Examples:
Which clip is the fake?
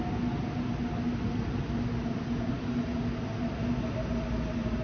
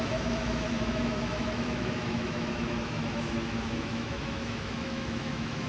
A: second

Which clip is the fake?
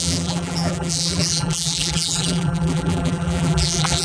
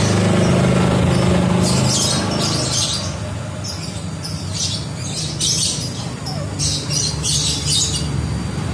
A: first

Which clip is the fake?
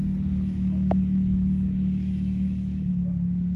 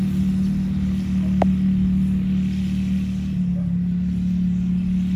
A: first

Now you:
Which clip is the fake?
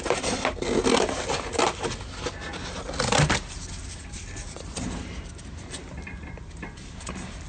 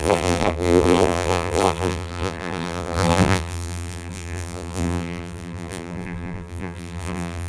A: second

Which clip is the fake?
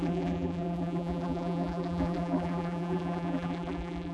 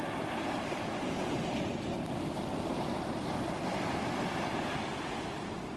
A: first